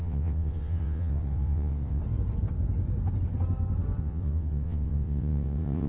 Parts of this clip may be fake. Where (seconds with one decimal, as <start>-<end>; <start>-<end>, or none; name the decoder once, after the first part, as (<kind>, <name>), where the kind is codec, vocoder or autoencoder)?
0.0-2.0 (vocoder, WaveNeXt); 4.0-5.9